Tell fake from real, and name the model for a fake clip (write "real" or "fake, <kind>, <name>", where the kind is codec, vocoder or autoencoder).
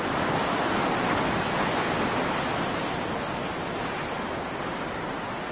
real